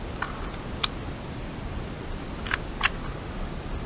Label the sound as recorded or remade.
recorded